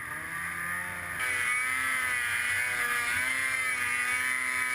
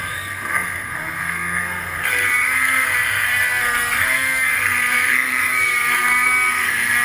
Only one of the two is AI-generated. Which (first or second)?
second